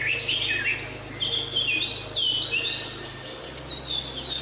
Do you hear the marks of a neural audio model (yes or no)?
no